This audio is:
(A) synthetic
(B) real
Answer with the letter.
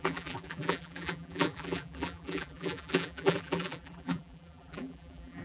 A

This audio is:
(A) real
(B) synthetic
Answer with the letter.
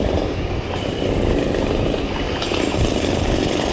B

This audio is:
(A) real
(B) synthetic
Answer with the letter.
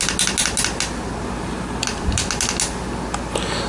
A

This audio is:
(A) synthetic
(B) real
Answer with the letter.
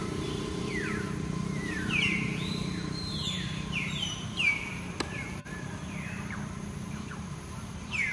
A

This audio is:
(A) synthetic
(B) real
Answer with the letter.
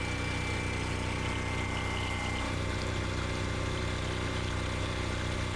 B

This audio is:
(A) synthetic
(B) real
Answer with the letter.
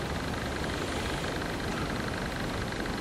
B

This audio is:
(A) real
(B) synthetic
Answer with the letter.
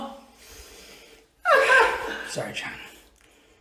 A